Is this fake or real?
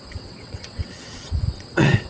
fake